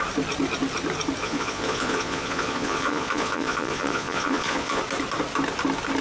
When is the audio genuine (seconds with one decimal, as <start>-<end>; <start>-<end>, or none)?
0.0-1.2; 4.8-6.0